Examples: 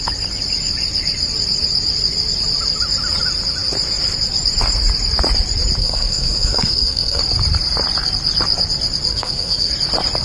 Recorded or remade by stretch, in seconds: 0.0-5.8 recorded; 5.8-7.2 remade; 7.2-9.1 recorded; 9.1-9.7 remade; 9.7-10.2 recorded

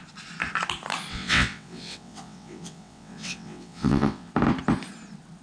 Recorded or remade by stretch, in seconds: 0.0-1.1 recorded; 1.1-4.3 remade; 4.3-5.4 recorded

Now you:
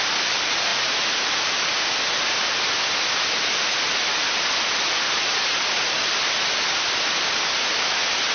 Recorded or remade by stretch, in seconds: 0.0-0.7 recorded; 0.7-1.4 remade; 1.4-8.3 recorded

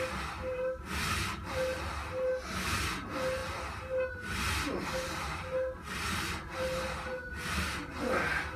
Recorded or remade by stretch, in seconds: 0.0-8.6 recorded

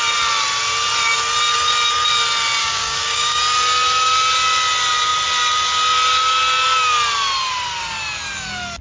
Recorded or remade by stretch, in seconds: 0.0-2.6 recorded; 2.6-3.4 remade; 3.4-8.8 recorded

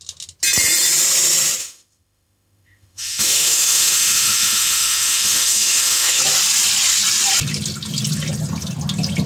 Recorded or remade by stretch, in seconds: 0.0-1.6 recorded; 1.6-6.2 remade; 6.2-9.3 recorded

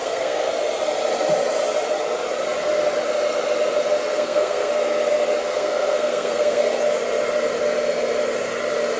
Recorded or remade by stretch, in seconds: 0.0-0.5 remade; 0.5-4.1 recorded; 4.1-4.7 remade; 4.7-5.5 recorded; 5.5-6.6 remade; 6.6-9.0 recorded